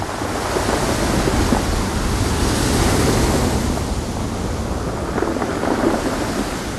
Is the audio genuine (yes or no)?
yes